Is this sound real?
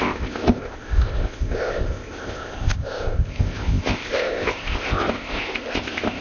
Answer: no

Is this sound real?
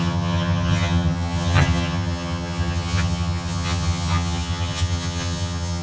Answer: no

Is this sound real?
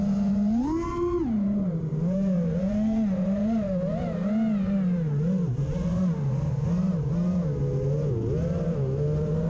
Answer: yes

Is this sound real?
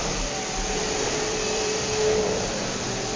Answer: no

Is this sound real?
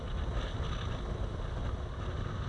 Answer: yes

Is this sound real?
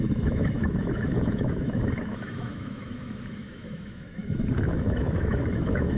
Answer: no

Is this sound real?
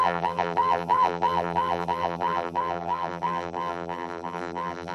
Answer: no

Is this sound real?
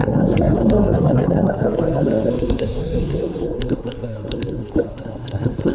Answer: no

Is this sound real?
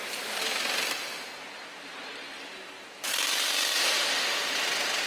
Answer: yes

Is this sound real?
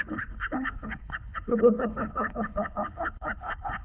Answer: no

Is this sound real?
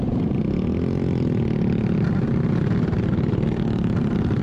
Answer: yes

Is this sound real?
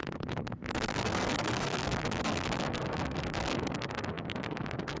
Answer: no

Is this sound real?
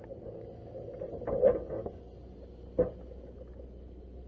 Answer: yes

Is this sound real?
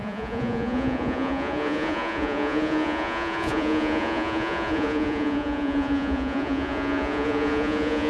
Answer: no